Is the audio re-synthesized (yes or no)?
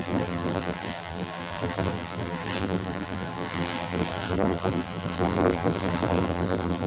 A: yes